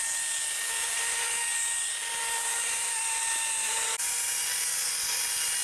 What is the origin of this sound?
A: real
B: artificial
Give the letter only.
A